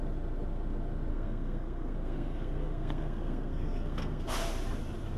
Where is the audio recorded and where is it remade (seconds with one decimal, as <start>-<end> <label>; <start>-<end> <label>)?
0.0-1.1 recorded; 1.1-4.2 remade; 4.2-5.2 recorded